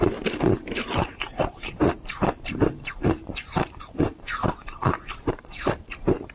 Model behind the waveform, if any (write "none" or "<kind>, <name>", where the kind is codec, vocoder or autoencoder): vocoder, BigVGAN v2